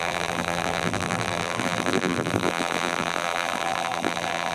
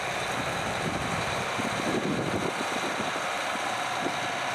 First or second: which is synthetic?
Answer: first